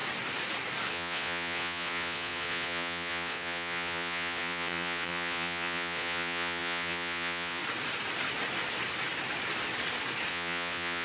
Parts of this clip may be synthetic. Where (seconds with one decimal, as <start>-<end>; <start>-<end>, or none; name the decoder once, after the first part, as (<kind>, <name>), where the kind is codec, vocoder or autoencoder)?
0.9-7.6 (vocoder, Vocos); 10.3-11.0